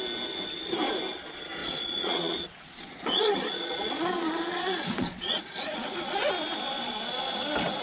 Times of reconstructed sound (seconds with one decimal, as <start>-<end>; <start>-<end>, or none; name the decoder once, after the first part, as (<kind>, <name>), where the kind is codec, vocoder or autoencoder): 1.6-6.3 (vocoder, Vocos)